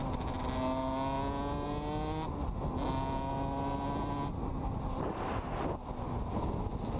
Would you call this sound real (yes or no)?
yes